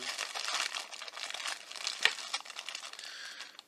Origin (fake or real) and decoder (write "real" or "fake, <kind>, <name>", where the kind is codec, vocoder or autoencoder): real